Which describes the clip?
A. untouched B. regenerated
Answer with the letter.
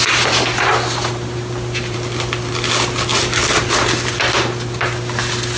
A